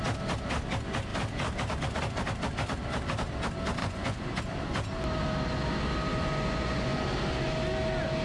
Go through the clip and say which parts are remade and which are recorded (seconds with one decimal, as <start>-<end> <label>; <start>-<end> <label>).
0.0-3.8 recorded; 3.8-4.4 remade; 4.4-6.1 recorded; 6.1-7.0 remade; 7.0-8.2 recorded